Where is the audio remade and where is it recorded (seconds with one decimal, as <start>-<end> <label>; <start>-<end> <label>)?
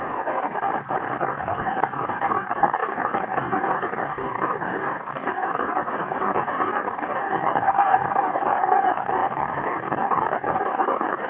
0.0-0.7 remade; 0.7-1.2 recorded; 1.2-11.3 remade